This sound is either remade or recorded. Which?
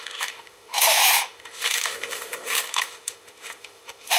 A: remade